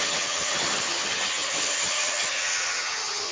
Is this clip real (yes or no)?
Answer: no